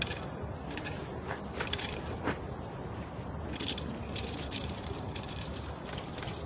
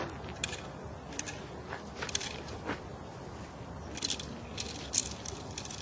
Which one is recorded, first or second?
second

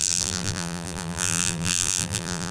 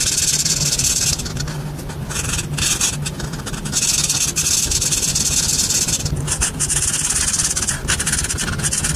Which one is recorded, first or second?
second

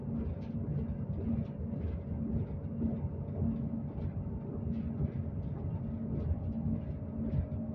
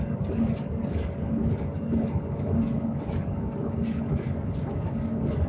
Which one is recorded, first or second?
first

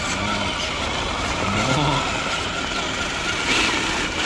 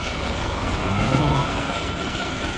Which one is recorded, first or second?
first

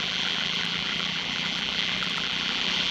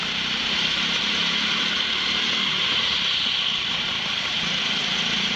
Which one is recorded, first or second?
second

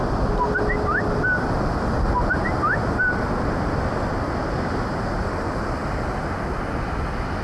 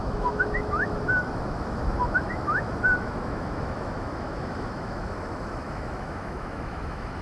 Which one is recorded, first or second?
first